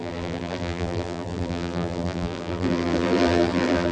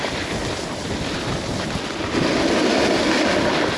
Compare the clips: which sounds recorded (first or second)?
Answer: second